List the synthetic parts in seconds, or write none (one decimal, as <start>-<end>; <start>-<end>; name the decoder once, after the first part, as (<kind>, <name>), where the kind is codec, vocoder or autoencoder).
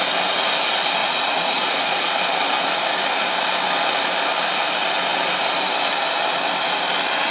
1.0-2.1 (vocoder, Vocos)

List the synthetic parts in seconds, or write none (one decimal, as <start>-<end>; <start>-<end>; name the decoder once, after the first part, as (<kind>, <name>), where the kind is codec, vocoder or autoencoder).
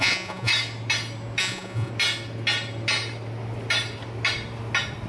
0.0-0.5 (vocoder, Vocos); 1.4-1.9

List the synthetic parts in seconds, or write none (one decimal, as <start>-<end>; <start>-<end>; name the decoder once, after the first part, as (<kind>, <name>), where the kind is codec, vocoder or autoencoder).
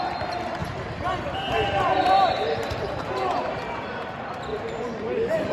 0.6-3.6 (vocoder, BigVGAN v2); 4.5-5.5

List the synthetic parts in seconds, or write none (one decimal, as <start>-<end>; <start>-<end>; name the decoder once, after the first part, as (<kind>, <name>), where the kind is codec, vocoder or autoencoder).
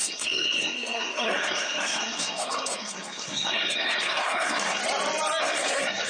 0.0-4.8 (codec, SNAC); 5.4-6.1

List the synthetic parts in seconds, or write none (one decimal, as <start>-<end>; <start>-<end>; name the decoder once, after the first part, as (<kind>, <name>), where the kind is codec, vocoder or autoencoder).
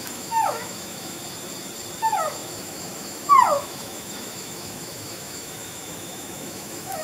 0.0-1.2 (autoencoder, DAC-VAE); 2.0-7.0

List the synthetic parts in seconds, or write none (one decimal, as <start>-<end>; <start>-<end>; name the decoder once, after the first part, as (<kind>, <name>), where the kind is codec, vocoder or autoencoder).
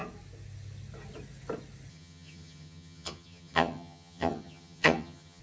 1.9-5.4 (vocoder, HiFi-GAN)